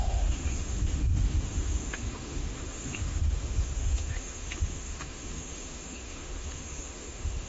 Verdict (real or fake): fake